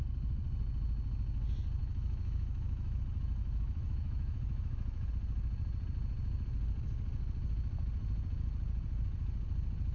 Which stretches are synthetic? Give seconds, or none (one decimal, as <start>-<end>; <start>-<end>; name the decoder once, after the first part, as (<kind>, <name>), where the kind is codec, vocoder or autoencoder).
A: 1.8-3.0 (autoencoder, DAC-VAE); 3.4-5.1